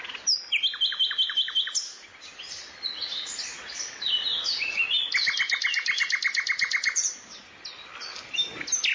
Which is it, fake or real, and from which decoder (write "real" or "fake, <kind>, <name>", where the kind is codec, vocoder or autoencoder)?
real